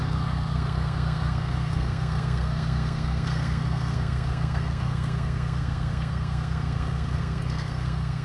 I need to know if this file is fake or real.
fake